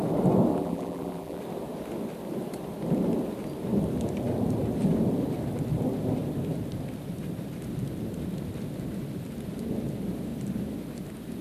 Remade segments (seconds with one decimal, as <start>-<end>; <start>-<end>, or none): 0.5-1.4